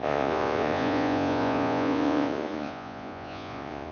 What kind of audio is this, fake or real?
fake